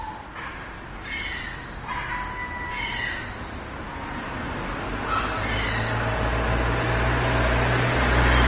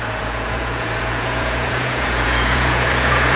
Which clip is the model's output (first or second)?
second